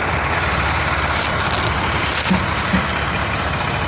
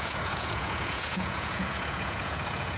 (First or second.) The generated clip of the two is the second